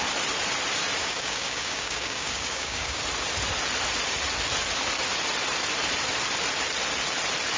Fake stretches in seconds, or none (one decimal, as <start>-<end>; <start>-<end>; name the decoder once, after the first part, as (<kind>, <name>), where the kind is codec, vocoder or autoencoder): 1.0-3.0 (codec, DAC)